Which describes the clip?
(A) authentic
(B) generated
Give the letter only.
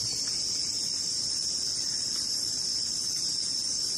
B